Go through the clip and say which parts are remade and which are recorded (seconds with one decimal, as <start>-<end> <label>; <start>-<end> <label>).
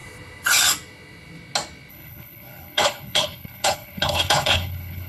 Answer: 0.0-1.9 recorded; 1.9-5.1 remade